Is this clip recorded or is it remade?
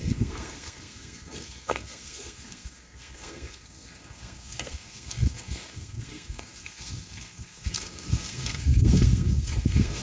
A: remade